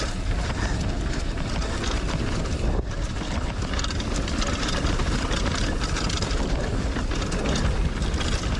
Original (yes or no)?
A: yes